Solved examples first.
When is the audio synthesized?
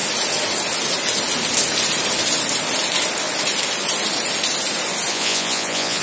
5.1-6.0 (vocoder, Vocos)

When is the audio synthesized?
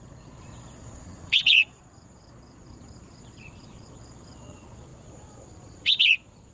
0.0-6.5 (vocoder, Vocos)